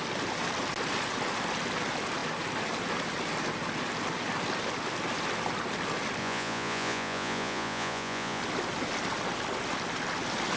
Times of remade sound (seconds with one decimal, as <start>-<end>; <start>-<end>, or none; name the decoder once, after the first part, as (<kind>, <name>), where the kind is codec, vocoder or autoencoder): 6.2-8.4 (vocoder, Vocos)